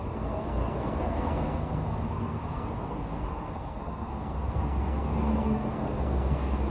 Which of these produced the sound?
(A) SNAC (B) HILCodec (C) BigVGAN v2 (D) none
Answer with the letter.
A